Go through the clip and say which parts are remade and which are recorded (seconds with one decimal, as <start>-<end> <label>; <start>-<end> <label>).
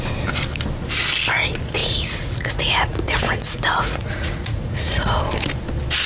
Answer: 0.0-1.8 recorded; 1.8-5.2 remade; 5.2-6.1 recorded